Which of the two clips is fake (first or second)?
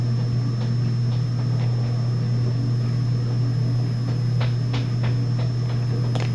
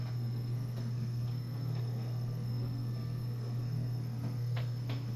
second